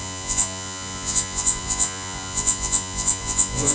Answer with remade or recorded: remade